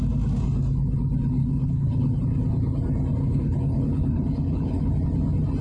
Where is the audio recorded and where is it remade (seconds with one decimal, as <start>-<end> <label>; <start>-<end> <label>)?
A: 0.0-1.4 recorded; 1.4-2.2 remade; 2.2-3.2 recorded; 3.2-4.9 remade; 4.9-5.6 recorded